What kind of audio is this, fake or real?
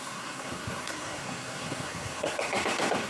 fake